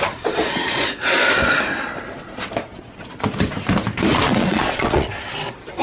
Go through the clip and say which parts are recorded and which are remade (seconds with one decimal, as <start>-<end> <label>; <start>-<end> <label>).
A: 0.0-0.4 recorded; 0.4-1.3 remade; 1.3-4.1 recorded; 4.1-5.1 remade; 5.1-5.8 recorded